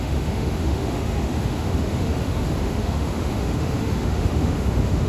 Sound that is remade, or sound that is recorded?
remade